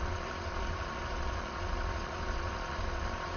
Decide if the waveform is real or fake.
fake